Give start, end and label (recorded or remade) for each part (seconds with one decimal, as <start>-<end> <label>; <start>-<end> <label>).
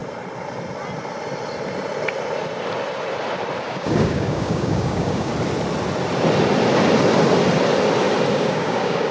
0.0-3.6 recorded; 3.6-5.3 remade; 5.3-8.3 recorded; 8.3-9.1 remade